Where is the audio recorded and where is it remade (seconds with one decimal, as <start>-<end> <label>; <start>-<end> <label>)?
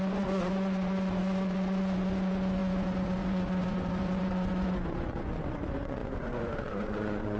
0.0-7.4 remade